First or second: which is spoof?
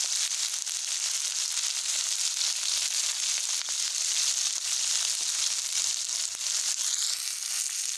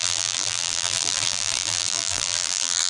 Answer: second